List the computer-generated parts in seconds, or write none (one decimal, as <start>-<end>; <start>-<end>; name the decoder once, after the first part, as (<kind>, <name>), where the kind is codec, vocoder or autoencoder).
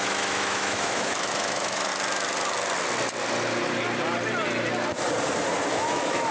0.0-1.9 (autoencoder, DAC-VAE); 5.7-6.3